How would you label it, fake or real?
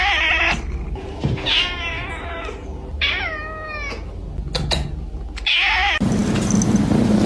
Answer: real